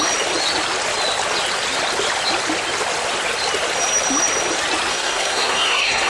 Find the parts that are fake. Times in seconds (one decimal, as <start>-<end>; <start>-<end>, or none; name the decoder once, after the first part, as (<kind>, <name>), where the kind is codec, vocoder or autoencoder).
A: 4.9-6.1 (codec, SNAC)